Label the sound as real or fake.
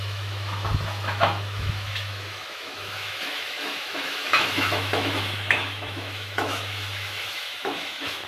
fake